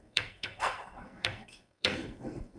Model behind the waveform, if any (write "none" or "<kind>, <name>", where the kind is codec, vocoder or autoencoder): codec, SNAC